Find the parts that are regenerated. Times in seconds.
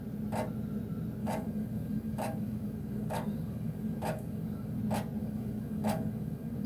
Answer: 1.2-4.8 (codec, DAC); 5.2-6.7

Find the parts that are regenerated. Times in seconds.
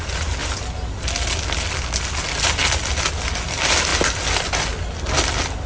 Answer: none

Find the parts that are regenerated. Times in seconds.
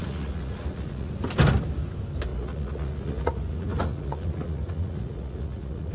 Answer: 0.0-1.1 (vocoder, Vocos); 2.3-5.9